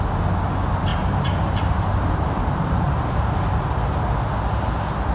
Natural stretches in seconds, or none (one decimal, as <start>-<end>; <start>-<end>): 0.0-0.9; 4.0-5.1